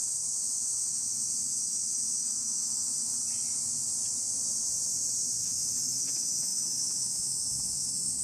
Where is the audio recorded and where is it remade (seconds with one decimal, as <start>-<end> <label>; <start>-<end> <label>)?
0.0-3.1 remade; 3.1-5.4 recorded; 5.4-8.2 remade